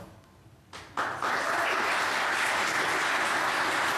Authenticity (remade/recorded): recorded